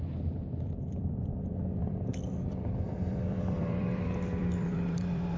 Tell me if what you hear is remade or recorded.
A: remade